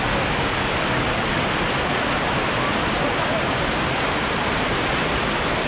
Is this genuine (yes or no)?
yes